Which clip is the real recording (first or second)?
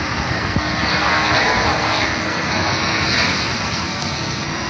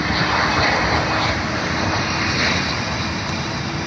second